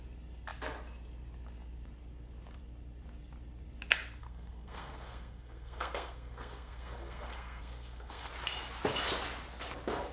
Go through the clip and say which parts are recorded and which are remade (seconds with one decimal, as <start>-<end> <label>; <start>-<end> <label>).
0.0-4.2 recorded; 4.2-8.3 remade; 8.3-10.1 recorded